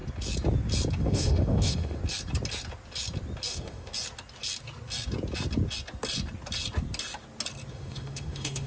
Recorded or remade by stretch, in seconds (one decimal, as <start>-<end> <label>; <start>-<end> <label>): 0.0-1.0 recorded; 1.0-2.0 remade; 2.0-3.5 recorded; 3.5-3.9 remade; 3.9-7.7 recorded; 7.7-8.7 remade